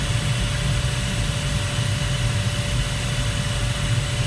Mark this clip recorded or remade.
recorded